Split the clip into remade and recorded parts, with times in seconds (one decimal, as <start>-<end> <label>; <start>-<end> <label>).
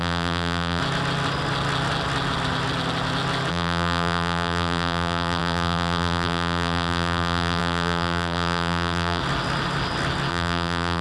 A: 0.0-0.8 remade; 0.8-3.5 recorded; 3.5-9.2 remade; 9.2-10.3 recorded; 10.3-11.0 remade